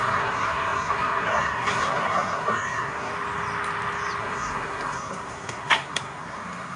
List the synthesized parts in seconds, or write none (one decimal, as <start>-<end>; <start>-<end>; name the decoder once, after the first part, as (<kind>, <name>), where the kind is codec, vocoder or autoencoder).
0.0-3.1 (codec, SNAC); 4.2-6.8